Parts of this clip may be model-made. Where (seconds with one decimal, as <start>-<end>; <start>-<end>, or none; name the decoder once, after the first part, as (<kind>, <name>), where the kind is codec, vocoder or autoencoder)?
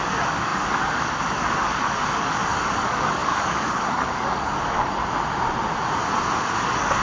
0.0-5.0 (codec, DAC); 6.6-7.0